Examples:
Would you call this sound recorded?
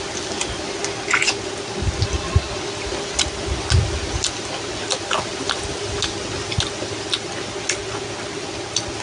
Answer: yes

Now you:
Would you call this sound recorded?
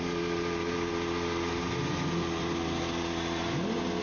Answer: yes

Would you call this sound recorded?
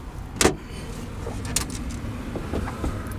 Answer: yes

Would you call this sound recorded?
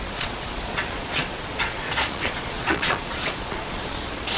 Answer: no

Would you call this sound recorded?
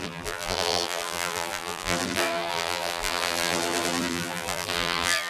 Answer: no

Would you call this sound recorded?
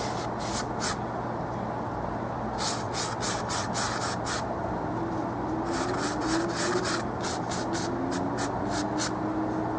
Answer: yes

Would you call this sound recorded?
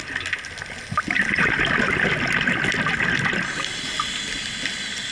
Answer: yes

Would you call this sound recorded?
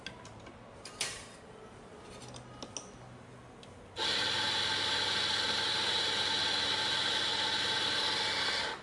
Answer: yes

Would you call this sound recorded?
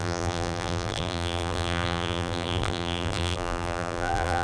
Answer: no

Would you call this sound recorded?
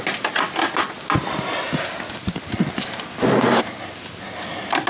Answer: yes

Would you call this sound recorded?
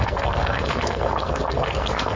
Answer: no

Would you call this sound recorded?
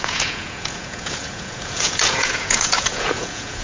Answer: no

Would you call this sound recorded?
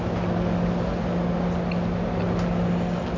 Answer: yes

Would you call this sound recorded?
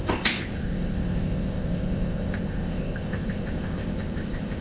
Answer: no